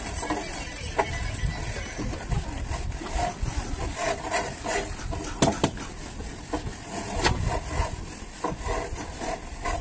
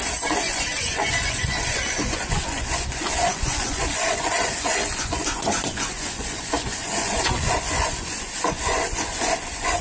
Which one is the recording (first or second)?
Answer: first